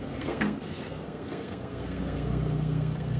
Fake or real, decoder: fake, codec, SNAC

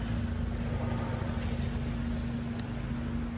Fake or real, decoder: real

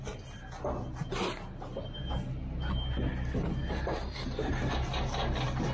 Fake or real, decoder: real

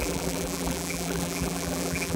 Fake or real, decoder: fake, vocoder, BigVGAN v2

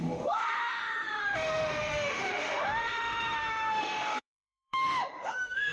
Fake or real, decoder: fake, autoencoder, DAC-VAE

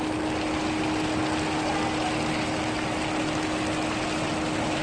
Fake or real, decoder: real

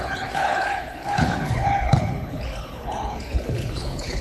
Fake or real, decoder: fake, codec, HILCodec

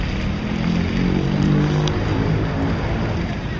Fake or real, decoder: real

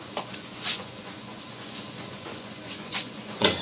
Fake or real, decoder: fake, vocoder, Vocos